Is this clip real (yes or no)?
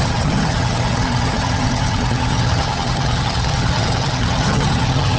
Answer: no